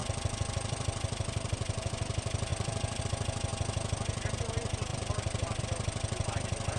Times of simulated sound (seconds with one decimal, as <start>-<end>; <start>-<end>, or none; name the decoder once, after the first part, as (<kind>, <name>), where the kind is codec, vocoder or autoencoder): 0.0-1.9 (vocoder, BigVGAN v2); 2.5-3.0; 4.9-5.6